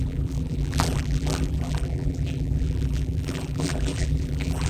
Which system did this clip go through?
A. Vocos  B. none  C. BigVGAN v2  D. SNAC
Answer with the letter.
C